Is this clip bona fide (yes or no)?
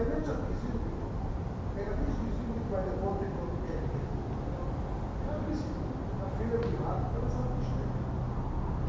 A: yes